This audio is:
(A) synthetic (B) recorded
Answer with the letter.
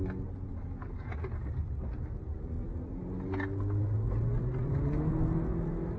B